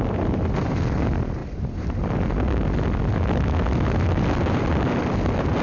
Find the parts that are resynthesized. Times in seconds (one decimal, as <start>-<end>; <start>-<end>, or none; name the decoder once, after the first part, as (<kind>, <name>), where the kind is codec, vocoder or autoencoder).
none